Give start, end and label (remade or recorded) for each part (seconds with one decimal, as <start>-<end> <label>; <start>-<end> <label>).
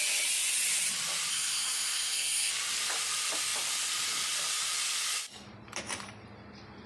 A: 0.0-1.3 recorded; 1.3-2.5 remade; 2.5-6.9 recorded